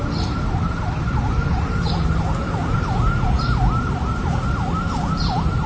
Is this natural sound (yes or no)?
no